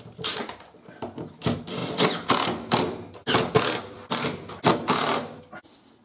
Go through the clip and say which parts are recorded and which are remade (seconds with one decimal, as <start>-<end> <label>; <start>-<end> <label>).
0.0-6.0 recorded